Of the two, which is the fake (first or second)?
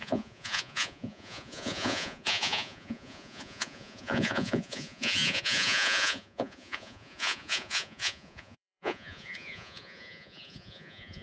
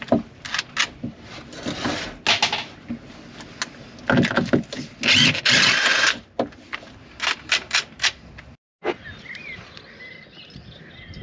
first